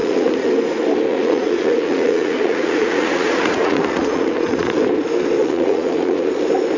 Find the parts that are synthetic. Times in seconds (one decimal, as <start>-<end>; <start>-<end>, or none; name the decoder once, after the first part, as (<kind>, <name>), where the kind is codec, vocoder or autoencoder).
0.0-0.5 (vocoder, Vocos); 1.1-4.8; 5.4-6.3